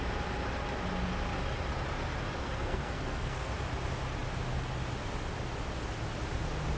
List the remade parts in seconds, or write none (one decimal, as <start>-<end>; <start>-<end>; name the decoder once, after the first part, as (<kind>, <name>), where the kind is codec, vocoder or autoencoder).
2.4-3.5 (codec, SNAC)